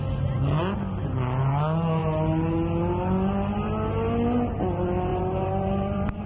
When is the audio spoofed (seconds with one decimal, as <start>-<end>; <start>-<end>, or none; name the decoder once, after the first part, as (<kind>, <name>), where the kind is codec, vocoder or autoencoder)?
5.1-6.3 (vocoder, BigVGAN v2)